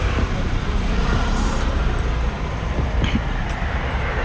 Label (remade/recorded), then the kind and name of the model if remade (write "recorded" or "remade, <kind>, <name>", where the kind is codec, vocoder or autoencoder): remade, vocoder, BigVGAN v2